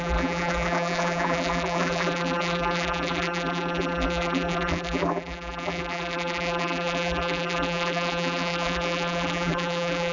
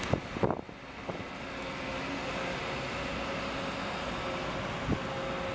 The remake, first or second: first